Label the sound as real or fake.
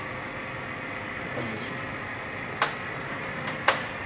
real